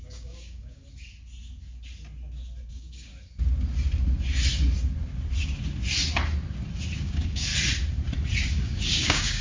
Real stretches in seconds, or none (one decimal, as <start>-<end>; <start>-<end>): 0.8-2.7; 3.1-7.0; 7.5-8.5